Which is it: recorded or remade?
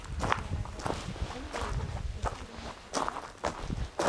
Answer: recorded